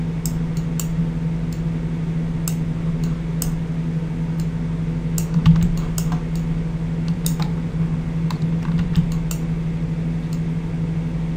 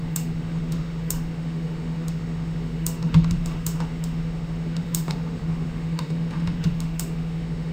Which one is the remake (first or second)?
second